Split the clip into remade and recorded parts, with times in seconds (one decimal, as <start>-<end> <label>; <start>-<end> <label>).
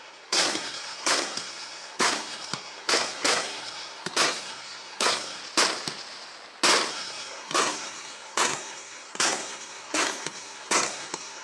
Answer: 0.0-5.4 remade; 5.4-6.9 recorded; 6.9-11.4 remade